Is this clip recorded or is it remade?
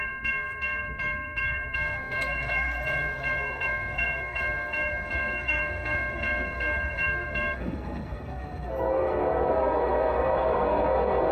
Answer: remade